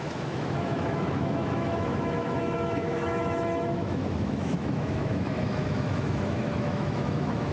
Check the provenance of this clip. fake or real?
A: fake